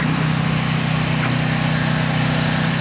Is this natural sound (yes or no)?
yes